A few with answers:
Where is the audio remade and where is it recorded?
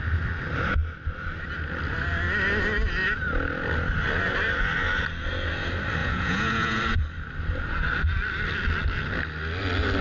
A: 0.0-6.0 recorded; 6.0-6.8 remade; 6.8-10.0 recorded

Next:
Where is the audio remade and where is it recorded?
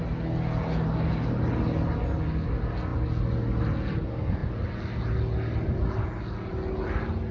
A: 0.0-7.3 recorded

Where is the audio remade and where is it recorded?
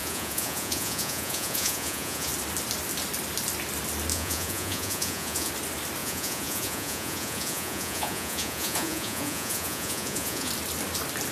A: 0.0-2.3 remade; 2.3-4.1 recorded; 4.1-5.5 remade; 5.5-6.0 recorded; 6.0-10.5 remade; 10.5-11.3 recorded